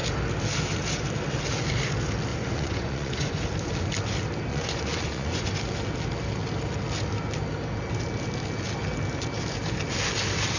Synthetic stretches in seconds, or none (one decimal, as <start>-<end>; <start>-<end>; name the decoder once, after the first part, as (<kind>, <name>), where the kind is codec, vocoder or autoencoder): 2.3-3.4 (vocoder, Vocos); 4.5-5.5